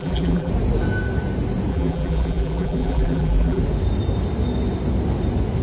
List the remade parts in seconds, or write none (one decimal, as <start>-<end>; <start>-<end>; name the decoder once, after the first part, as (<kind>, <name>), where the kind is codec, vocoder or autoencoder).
0.0-0.5 (vocoder, BigVGAN v2); 1.7-3.6